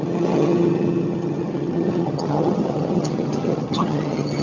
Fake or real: fake